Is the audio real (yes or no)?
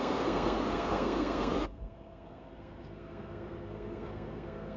no